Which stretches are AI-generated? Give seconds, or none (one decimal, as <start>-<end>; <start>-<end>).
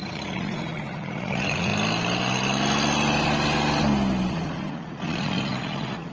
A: 0.0-1.7; 4.3-6.1